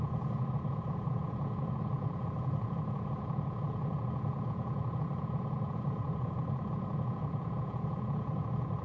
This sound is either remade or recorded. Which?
remade